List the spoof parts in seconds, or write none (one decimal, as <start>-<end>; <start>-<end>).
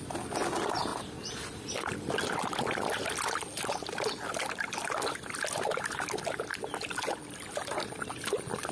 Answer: none